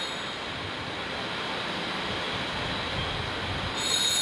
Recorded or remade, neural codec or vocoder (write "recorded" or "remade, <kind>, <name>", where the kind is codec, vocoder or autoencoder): recorded